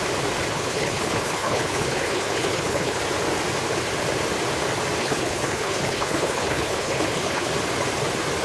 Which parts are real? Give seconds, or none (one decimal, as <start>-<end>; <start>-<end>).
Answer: 0.0-0.5; 3.0-5.0; 7.5-8.4